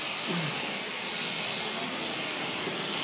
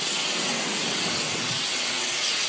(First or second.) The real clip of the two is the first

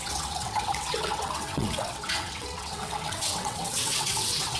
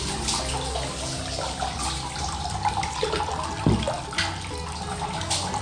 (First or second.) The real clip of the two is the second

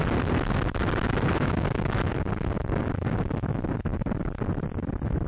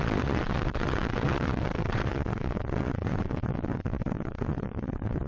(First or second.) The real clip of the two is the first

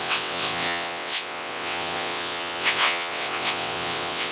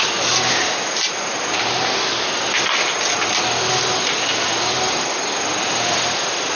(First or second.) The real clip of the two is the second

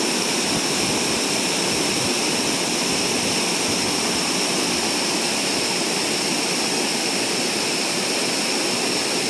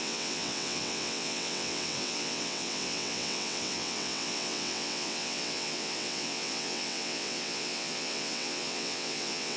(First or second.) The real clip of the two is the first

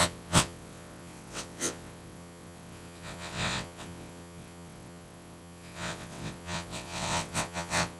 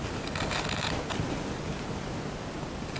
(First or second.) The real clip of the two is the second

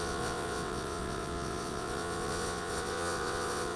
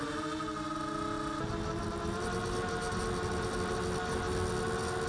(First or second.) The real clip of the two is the second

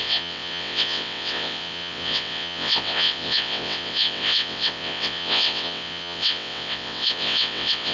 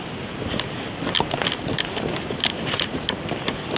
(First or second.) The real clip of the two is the second